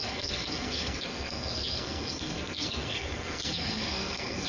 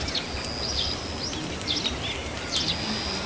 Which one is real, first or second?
second